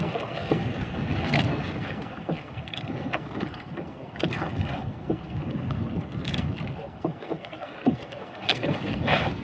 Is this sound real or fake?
fake